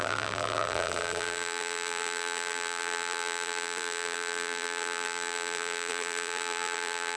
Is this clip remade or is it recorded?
remade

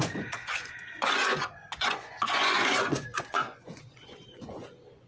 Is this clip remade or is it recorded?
remade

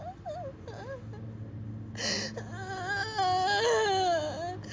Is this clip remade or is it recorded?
recorded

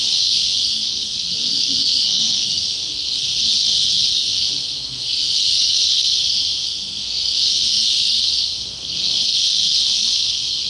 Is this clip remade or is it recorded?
remade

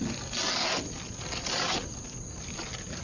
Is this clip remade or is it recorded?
recorded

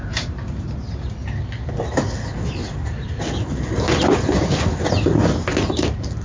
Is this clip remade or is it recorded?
recorded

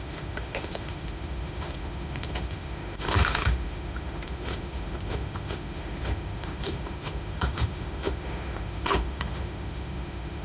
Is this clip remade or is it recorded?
remade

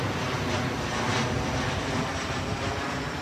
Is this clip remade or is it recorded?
recorded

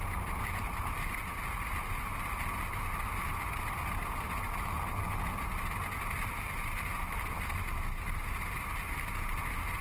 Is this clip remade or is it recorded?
recorded